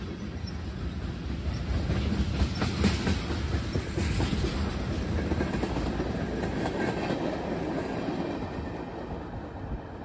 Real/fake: real